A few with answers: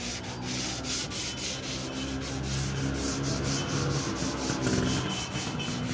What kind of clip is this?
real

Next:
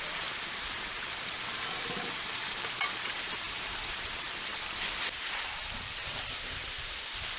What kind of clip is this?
fake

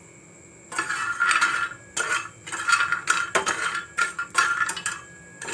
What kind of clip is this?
real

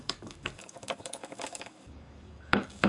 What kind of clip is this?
fake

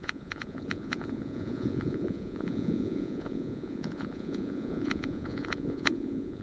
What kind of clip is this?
fake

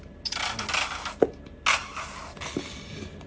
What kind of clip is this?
real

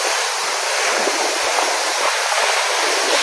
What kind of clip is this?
real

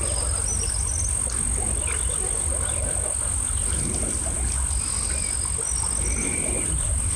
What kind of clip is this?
real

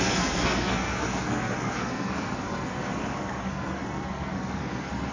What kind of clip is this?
fake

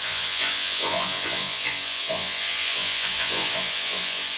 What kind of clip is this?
fake